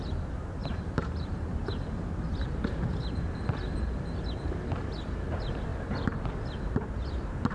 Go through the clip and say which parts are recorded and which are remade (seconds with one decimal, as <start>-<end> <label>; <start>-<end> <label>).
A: 0.0-0.6 recorded; 0.6-1.6 remade; 1.6-2.3 recorded; 2.3-3.0 remade; 3.0-7.5 recorded